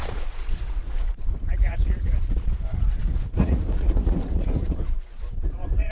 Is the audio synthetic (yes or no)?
yes